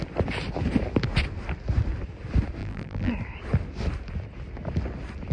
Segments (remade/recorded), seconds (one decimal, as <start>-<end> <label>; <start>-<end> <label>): 0.0-2.6 recorded; 2.6-3.1 remade; 3.1-5.3 recorded